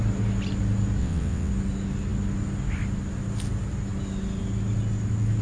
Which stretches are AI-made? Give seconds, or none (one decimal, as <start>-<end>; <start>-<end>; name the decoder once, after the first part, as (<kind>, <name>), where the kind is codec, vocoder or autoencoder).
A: 1.0-1.5 (vocoder, WaveNeXt)